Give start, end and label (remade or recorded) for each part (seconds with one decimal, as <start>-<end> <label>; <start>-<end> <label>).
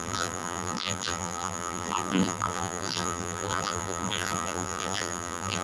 0.0-5.6 remade